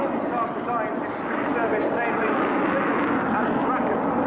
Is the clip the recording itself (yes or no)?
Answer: yes